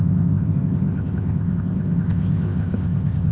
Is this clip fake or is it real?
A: fake